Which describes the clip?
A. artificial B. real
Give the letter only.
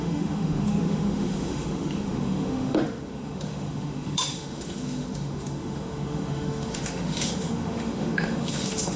A